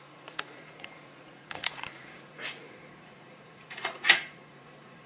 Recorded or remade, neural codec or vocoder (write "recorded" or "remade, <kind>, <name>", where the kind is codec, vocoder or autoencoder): remade, vocoder, Vocos